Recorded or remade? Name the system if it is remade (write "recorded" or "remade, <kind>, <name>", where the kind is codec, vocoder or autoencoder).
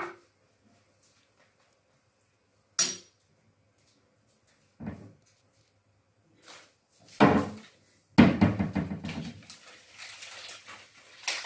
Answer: recorded